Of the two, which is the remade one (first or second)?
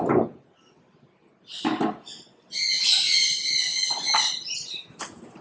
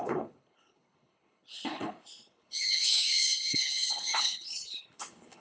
second